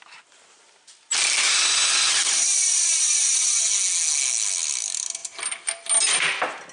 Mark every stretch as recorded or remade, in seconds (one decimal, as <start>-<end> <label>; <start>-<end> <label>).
0.0-6.7 recorded